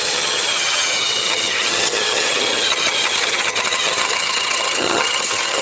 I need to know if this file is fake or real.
fake